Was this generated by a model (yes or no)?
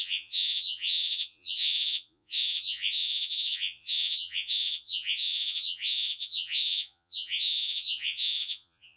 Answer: yes